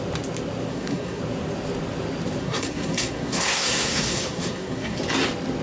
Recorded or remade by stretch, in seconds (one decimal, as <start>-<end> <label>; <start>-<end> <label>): 0.0-0.7 recorded; 0.7-1.2 remade; 1.2-2.4 recorded; 2.4-5.0 remade; 5.0-5.6 recorded